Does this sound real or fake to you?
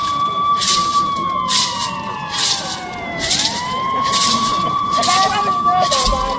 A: fake